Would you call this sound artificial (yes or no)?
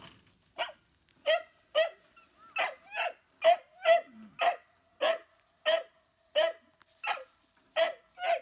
no